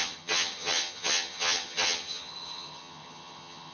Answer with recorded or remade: remade